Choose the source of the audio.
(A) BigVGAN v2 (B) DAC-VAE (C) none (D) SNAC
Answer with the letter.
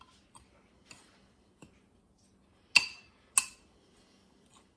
C